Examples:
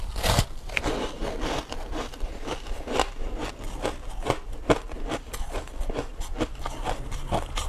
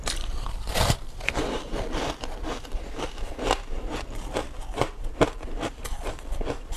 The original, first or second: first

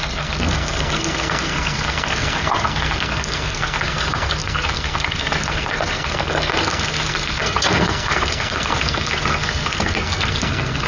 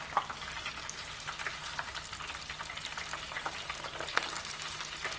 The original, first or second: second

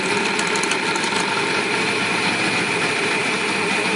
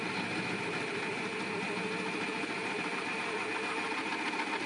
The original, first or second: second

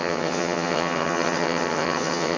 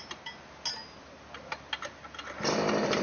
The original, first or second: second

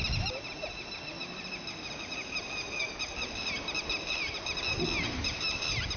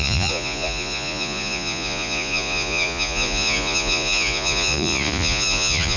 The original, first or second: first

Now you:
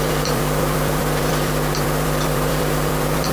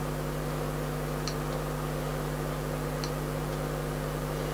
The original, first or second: second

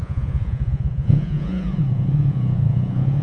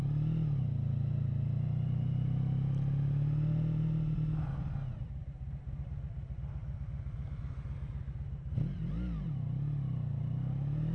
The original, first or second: second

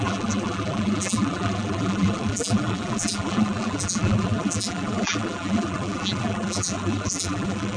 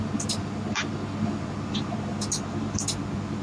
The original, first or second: second